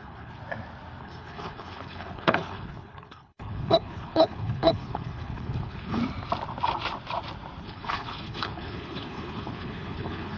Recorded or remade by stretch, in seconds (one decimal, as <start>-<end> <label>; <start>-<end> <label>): 0.0-0.4 remade; 0.4-1.0 recorded; 1.0-6.0 remade; 6.0-7.6 recorded; 7.6-10.4 remade